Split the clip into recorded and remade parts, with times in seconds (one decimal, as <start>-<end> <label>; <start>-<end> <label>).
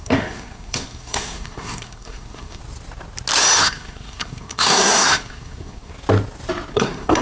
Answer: 0.0-2.6 remade; 2.6-3.6 recorded; 3.6-5.9 remade; 5.9-6.7 recorded; 6.7-7.2 remade